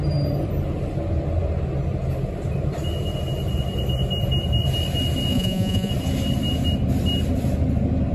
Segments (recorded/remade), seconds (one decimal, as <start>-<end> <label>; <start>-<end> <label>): 0.0-5.3 recorded; 5.3-5.9 remade; 5.9-8.1 recorded